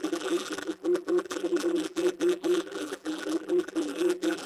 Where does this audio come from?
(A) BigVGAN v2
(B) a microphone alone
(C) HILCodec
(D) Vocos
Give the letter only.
A